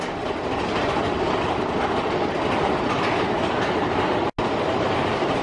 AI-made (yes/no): no